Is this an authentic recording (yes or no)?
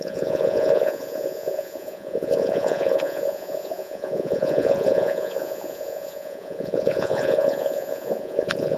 no